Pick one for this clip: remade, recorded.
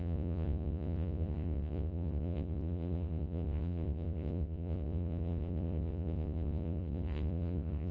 remade